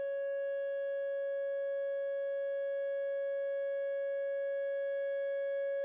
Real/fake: real